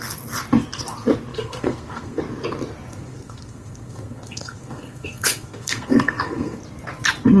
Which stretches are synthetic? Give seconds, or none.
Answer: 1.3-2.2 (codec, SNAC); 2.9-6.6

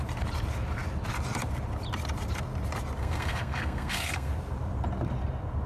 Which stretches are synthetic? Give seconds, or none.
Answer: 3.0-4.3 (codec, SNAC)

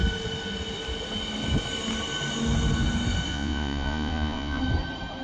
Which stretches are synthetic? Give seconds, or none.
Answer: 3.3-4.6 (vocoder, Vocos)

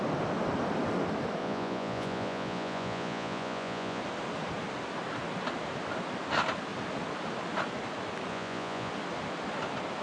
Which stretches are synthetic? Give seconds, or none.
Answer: 1.4-4.0 (vocoder, Vocos); 8.3-8.9